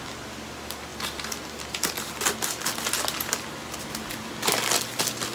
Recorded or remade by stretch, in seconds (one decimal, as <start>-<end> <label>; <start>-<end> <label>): 0.0-5.3 recorded